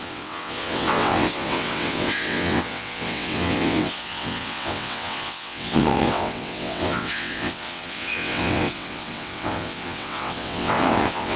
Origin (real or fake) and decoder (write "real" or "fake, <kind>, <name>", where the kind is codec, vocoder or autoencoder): fake, vocoder, WaveNeXt